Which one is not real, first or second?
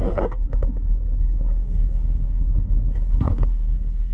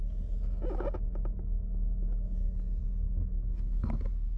first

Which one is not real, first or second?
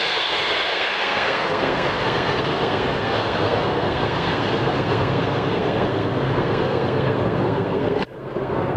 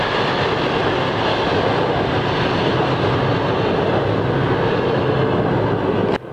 first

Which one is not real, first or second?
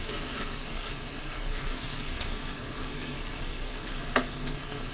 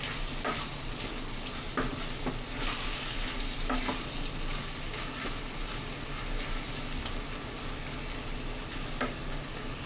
first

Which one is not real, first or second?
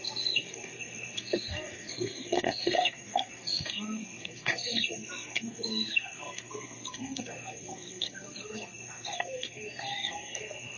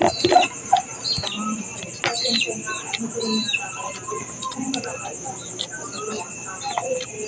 first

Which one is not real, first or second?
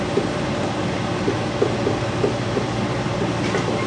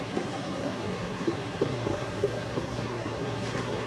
second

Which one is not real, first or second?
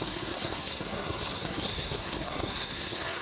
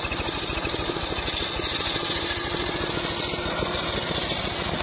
first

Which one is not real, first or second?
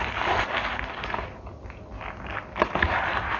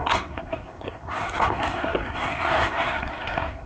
second